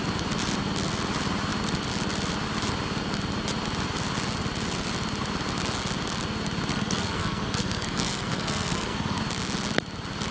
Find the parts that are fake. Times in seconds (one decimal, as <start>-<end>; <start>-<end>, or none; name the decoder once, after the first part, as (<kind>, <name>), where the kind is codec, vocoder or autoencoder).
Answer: 6.7-9.2 (codec, SNAC)